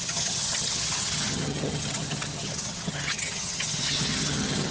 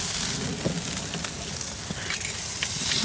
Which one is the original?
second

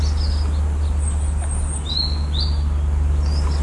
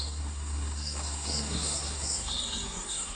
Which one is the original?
first